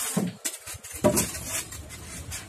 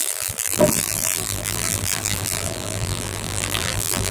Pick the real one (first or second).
first